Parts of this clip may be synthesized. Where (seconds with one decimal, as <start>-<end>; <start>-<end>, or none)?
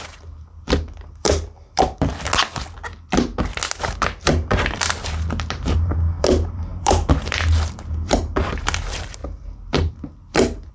0.0-2.1; 4.3-9.2